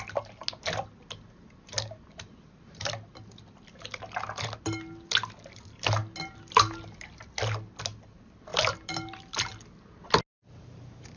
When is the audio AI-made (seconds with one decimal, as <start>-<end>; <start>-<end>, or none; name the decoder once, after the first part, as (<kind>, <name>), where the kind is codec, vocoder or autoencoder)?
8.5-10.1 (vocoder, BigVGAN v2)

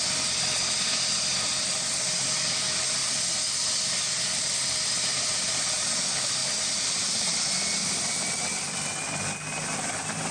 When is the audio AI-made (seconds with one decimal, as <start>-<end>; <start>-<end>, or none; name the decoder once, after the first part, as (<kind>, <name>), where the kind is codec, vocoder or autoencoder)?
6.4-7.5 (vocoder, BigVGAN v2)

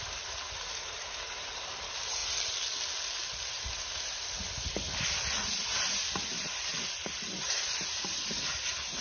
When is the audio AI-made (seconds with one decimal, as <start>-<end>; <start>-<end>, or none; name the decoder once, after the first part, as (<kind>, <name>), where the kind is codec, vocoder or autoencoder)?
0.0-2.2 (vocoder, BigVGAN v2); 3.5-4.4; 7.9-9.0